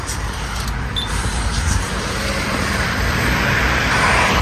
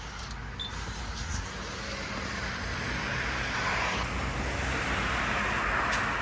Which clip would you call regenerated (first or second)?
first